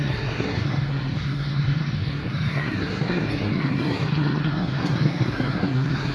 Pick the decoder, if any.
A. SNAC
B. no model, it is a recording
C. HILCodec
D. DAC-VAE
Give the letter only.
A